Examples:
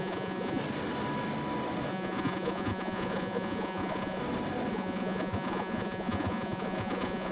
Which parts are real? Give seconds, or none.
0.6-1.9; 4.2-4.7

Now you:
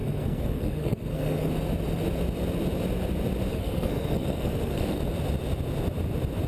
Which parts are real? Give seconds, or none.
1.5-3.5; 5.0-6.5

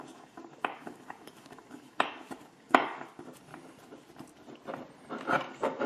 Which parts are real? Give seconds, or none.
3.5-5.5

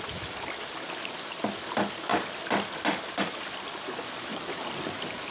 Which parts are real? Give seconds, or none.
0.0-5.3

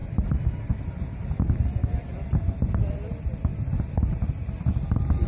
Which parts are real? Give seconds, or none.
0.0-5.3

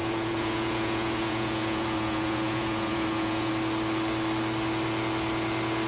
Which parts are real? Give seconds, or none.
3.5-5.9

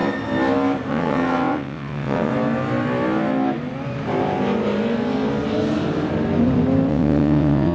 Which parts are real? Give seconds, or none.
0.0-0.9; 2.3-6.9